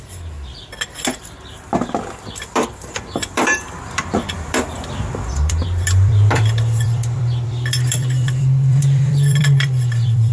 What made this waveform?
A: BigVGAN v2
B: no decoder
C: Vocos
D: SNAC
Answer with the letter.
A